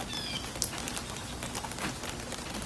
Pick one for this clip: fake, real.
real